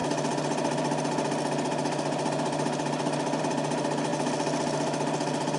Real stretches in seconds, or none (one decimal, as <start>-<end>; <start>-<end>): 0.0-5.6